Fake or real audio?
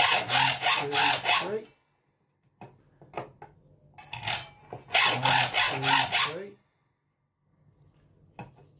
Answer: real